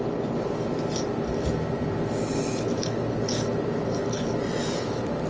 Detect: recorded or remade recorded